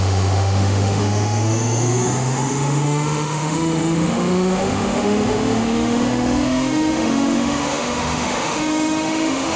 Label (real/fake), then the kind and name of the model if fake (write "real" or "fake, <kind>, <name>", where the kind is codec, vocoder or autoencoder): fake, autoencoder, DAC-VAE